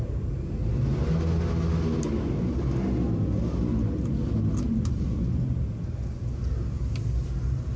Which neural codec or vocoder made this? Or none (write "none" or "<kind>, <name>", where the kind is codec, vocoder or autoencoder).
none